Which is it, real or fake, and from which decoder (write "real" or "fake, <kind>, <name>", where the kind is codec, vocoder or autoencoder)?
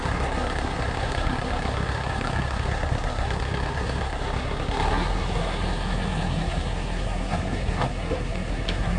fake, codec, SNAC